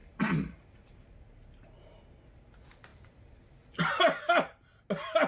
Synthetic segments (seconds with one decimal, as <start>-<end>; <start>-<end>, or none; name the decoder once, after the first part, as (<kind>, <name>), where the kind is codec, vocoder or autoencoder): 0.0-1.1 (vocoder, BigVGAN v2)